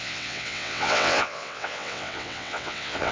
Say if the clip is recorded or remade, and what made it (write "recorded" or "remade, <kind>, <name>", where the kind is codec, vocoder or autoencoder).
remade, vocoder, WaveNeXt